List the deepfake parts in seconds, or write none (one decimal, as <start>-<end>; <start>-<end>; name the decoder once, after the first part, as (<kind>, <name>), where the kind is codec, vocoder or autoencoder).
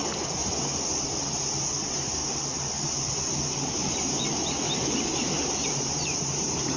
1.5-2.2 (vocoder, BigVGAN v2); 5.1-6.8